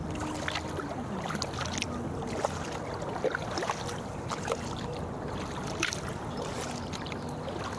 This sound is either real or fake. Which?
real